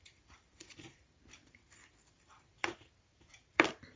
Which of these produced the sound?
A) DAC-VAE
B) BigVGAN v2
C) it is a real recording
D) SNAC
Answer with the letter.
B